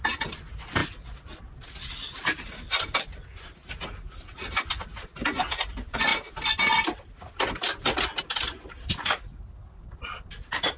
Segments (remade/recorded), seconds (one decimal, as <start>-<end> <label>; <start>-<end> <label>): 0.0-10.8 recorded